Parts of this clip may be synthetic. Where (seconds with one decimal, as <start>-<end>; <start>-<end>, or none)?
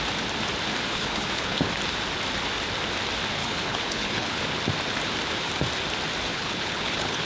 0.9-1.7; 3.4-4.4; 6.3-7.3